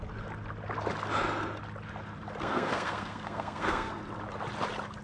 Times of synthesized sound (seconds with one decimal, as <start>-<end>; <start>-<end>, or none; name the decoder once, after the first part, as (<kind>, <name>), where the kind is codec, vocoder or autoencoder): 2.4-3.9 (codec, SNAC)